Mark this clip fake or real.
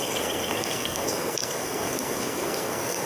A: fake